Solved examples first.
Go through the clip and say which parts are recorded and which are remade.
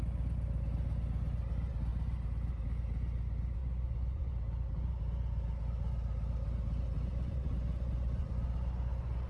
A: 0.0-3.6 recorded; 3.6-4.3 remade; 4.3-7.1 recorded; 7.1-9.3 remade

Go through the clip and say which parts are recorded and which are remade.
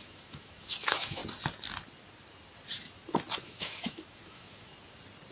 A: 0.0-1.2 remade; 1.2-3.4 recorded; 3.4-4.7 remade; 4.7-5.3 recorded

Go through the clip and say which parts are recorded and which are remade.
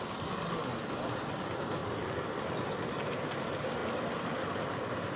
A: 0.0-5.2 recorded